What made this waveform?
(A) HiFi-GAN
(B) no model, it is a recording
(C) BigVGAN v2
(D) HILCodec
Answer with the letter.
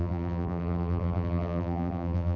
C